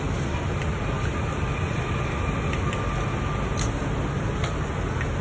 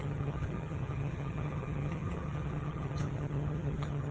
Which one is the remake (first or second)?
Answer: second